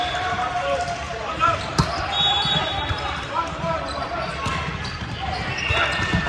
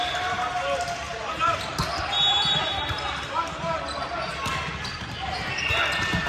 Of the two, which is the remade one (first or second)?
first